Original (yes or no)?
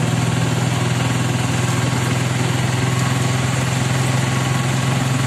yes